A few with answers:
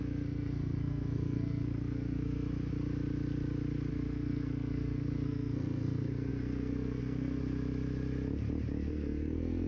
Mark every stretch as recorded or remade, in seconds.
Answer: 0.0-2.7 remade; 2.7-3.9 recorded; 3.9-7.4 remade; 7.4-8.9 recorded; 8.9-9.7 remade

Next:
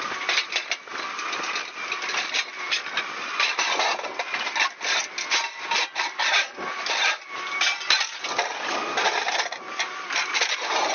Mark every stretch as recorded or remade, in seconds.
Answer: 0.0-10.9 recorded

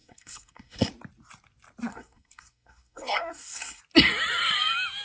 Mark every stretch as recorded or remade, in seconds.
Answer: 0.0-0.9 remade; 0.9-1.9 recorded; 1.9-3.8 remade; 3.8-5.0 recorded

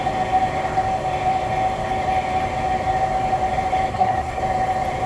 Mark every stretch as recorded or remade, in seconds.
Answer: 0.0-3.9 recorded; 3.9-4.4 remade; 4.4-5.1 recorded

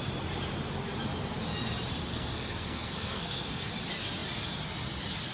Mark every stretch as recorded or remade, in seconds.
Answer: 0.0-2.1 recorded; 2.1-3.7 remade; 3.7-5.3 recorded

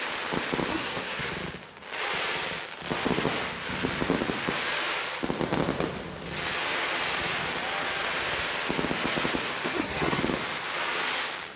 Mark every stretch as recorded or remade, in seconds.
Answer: 0.0-0.7 recorded; 0.7-1.3 remade; 1.3-9.6 recorded; 9.6-10.2 remade; 10.2-11.6 recorded